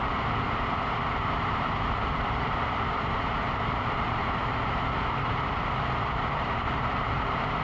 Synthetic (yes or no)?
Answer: yes